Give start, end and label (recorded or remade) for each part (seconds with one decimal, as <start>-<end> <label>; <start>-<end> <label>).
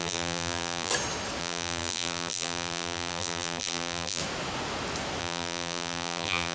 0.0-0.9 remade; 0.9-1.4 recorded; 1.4-4.2 remade; 4.2-5.2 recorded; 5.2-6.5 remade